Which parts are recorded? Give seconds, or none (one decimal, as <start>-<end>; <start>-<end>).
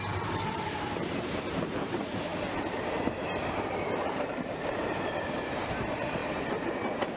none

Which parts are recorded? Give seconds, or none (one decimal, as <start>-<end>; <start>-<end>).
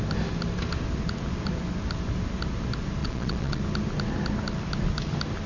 0.0-3.0; 3.6-5.5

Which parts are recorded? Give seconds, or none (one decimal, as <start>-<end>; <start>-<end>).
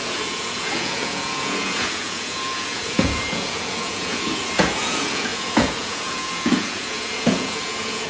none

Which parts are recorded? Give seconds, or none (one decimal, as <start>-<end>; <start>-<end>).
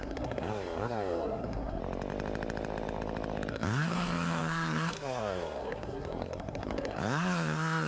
1.8-3.5